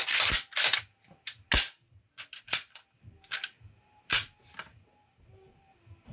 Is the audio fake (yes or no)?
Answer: no